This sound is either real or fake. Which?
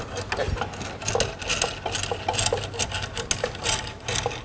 real